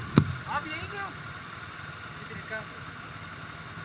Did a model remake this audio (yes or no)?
no